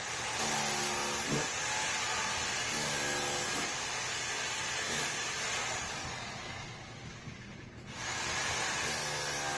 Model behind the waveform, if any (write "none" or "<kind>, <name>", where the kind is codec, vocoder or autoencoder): none